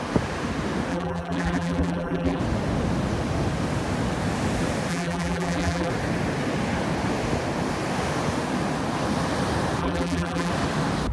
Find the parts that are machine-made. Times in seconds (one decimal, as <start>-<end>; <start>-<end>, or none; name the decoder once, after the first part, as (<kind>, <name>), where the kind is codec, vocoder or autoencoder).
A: 0.9-2.4 (vocoder, BigVGAN v2); 4.9-5.9; 9.8-10.5